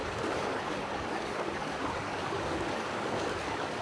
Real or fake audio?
fake